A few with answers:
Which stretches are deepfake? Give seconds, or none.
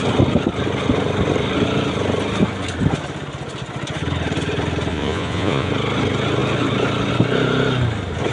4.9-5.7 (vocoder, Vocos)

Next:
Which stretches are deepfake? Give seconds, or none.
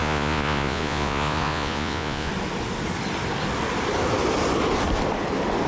0.0-2.3 (vocoder, Vocos)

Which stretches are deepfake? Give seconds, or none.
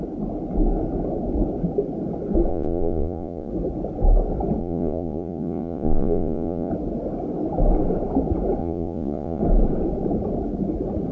2.5-3.5 (vocoder, Vocos); 4.6-6.7; 8.6-9.4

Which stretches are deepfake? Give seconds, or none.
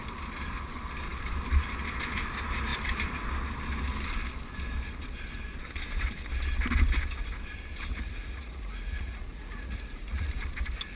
7.9-10.3 (vocoder, Vocos)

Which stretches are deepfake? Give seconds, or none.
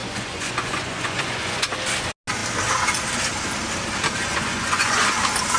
0.0-1.7 (vocoder, Vocos); 4.3-5.1